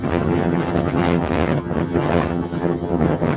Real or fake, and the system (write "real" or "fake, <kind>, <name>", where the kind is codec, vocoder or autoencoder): fake, vocoder, HiFi-GAN